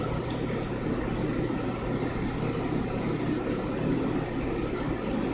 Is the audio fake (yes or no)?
no